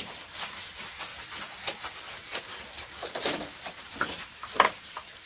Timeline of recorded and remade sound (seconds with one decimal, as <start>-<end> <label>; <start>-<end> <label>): 0.0-5.3 recorded